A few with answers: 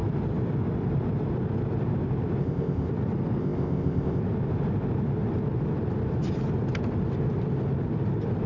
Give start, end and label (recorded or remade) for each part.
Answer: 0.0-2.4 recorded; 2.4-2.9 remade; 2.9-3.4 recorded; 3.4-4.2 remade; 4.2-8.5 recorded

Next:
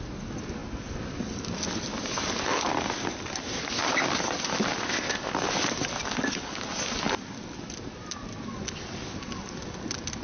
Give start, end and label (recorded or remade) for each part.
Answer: 0.0-4.8 recorded; 4.8-5.3 remade; 5.3-10.2 recorded

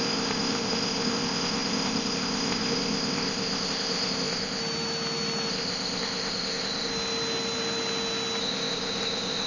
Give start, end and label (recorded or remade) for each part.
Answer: 0.0-4.6 remade; 4.6-5.5 recorded; 5.5-6.9 remade; 6.9-8.4 recorded; 8.4-9.5 remade

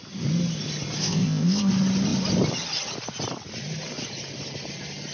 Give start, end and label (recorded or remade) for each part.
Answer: 0.0-1.0 recorded; 1.0-1.7 remade; 1.7-5.1 recorded